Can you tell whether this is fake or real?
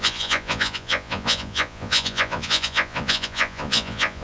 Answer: fake